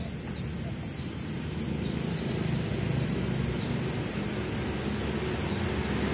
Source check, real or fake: real